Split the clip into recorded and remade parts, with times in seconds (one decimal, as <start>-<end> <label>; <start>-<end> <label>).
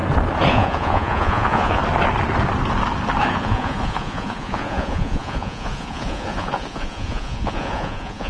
0.0-0.5 recorded; 0.5-1.8 remade; 1.8-3.3 recorded; 3.3-8.3 remade